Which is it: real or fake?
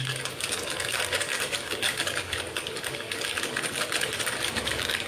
fake